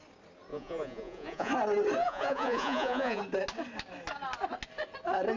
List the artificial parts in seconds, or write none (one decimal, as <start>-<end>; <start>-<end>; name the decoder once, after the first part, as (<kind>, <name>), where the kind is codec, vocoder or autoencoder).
0.5-1.5 (vocoder, Vocos); 2.0-3.2